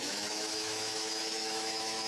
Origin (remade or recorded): remade